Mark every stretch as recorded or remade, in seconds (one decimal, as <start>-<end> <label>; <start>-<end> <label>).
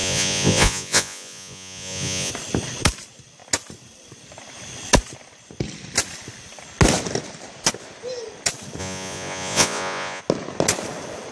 0.0-2.3 remade; 2.3-8.8 recorded; 8.8-10.2 remade; 10.2-11.3 recorded